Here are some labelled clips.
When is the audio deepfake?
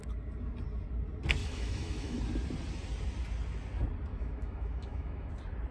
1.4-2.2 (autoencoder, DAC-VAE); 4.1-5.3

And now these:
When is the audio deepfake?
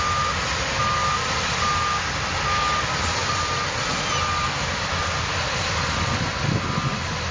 none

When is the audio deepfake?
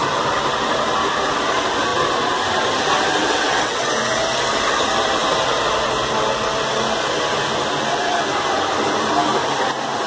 3.2-3.9 (vocoder, WaveNeXt)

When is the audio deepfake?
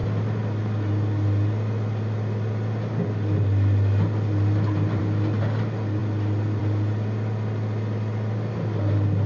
none